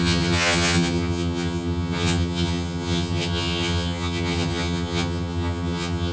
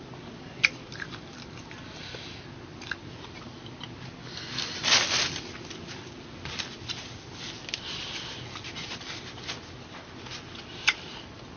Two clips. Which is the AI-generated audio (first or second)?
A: first